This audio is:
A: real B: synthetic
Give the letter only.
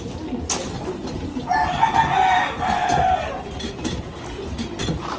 A